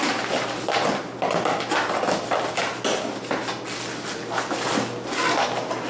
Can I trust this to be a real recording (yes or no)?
yes